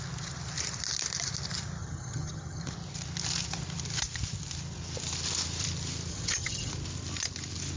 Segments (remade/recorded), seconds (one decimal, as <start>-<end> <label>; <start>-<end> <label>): 0.0-1.8 recorded; 1.8-2.6 remade; 2.6-6.1 recorded; 6.1-6.7 remade; 6.7-7.8 recorded